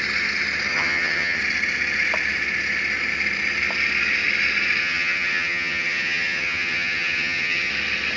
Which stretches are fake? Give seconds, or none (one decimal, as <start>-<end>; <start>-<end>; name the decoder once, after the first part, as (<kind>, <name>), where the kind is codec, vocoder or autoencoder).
0.7-1.4 (vocoder, HiFi-GAN); 4.8-7.7